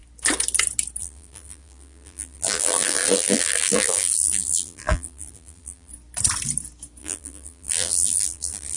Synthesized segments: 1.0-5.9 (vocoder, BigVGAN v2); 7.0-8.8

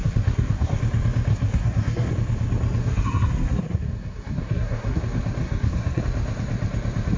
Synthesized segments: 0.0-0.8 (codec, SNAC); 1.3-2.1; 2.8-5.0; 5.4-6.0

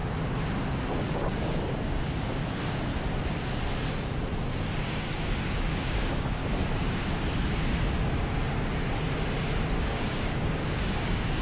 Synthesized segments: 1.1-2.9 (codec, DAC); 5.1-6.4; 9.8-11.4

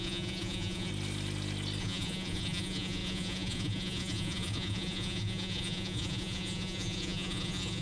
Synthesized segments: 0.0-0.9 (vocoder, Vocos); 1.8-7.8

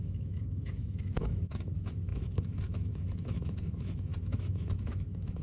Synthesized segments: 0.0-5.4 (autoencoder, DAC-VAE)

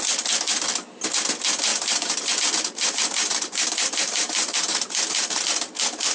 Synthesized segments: 1.7-5.4 (vocoder, BigVGAN v2)

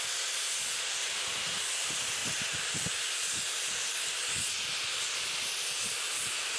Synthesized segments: none

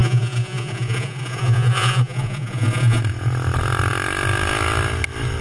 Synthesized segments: 0.0-3.0 (vocoder, Vocos)